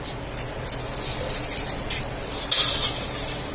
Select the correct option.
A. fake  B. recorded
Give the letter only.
B